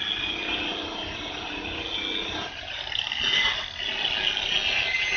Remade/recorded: recorded